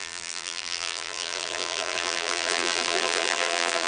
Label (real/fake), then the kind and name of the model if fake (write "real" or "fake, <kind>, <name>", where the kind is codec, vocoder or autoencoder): fake, vocoder, BigVGAN v2